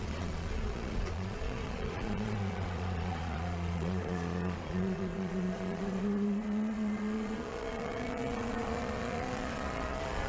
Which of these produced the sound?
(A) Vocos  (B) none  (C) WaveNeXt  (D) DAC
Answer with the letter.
A